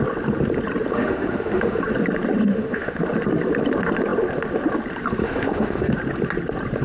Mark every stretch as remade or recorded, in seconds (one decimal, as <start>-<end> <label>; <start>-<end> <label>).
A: 0.0-0.9 recorded; 0.9-1.8 remade; 1.8-2.5 recorded; 2.5-3.0 remade; 3.0-5.2 recorded; 5.2-5.9 remade; 5.9-6.8 recorded

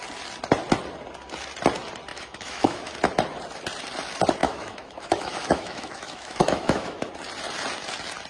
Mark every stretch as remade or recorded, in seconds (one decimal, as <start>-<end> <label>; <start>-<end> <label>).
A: 0.0-2.1 recorded; 2.1-2.9 remade; 2.9-4.4 recorded; 4.4-7.1 remade; 7.1-8.3 recorded

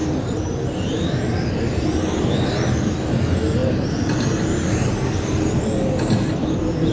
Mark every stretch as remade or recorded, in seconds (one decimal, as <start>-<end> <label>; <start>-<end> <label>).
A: 0.0-6.9 recorded

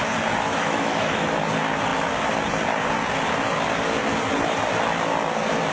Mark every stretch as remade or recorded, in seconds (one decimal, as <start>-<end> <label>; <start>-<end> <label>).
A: 0.0-0.5 recorded; 0.5-1.4 remade; 1.4-5.7 recorded

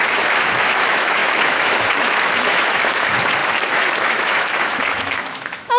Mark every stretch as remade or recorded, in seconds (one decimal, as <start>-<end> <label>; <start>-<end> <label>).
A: 0.0-5.8 remade

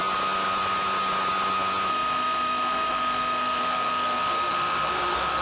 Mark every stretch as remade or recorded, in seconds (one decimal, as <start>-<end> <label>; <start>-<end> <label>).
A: 0.0-1.9 recorded; 1.9-5.4 remade